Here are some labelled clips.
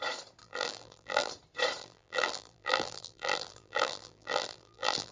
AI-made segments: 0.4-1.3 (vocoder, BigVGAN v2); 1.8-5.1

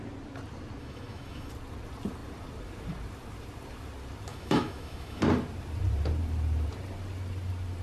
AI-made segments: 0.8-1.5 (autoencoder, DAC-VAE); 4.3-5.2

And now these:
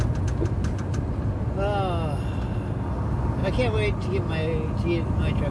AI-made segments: none